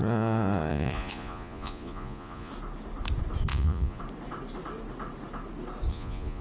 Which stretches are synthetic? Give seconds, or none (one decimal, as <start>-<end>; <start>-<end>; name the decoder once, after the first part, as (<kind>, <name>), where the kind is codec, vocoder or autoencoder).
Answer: 0.7-2.5 (vocoder, Vocos); 3.5-4.0; 5.9-6.4